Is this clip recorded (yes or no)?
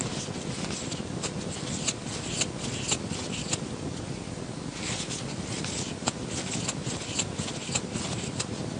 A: yes